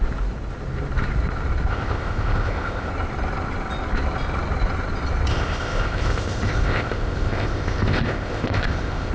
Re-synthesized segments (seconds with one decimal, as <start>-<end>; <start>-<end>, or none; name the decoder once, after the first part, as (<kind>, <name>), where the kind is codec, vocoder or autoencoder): 1.7-2.9 (codec, ZipCodec); 5.3-9.1